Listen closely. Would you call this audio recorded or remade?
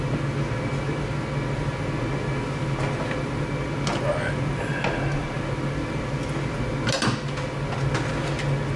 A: recorded